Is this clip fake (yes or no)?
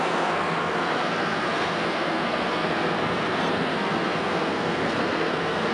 yes